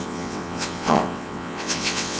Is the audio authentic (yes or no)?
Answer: no